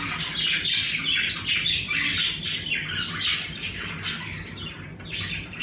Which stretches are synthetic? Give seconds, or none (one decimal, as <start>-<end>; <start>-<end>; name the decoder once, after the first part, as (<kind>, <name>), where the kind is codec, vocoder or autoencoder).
none